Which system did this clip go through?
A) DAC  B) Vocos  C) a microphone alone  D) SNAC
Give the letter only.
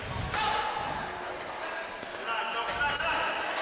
C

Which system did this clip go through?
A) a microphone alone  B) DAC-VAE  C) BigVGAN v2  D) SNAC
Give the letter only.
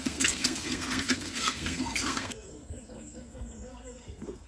D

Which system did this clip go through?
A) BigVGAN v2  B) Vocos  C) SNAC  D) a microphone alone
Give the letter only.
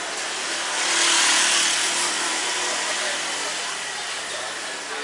D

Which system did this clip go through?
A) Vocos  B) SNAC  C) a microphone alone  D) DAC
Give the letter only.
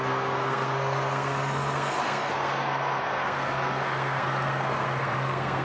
B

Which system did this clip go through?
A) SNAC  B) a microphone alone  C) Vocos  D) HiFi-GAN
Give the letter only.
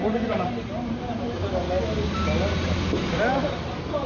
B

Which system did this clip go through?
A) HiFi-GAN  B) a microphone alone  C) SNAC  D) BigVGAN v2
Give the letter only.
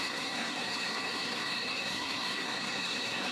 C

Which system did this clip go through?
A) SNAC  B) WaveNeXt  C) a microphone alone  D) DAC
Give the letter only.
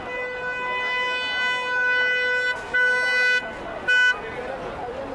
C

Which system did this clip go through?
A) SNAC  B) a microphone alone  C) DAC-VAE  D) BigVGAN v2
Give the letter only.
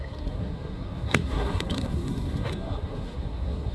A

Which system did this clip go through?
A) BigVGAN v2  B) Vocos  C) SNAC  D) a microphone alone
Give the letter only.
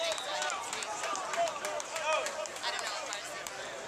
D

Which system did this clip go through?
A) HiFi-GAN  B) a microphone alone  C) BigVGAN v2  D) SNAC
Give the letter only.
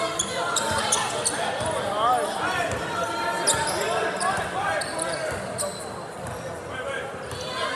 B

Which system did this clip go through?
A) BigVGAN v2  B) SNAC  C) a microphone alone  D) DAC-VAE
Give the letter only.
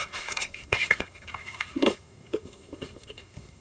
B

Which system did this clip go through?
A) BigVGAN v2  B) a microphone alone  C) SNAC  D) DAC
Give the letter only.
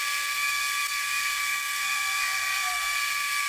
C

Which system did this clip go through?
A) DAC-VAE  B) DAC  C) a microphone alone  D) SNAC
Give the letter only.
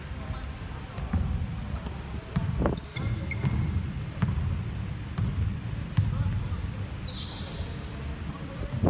C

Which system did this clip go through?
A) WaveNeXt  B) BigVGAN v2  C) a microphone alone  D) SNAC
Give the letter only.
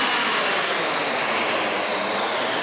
C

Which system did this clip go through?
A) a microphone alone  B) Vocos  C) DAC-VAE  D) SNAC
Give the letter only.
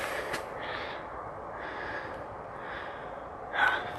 A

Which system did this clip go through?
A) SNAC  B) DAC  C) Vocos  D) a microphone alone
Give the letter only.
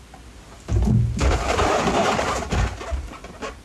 D